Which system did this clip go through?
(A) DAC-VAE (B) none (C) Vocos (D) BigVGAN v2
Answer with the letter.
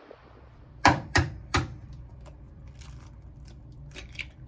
D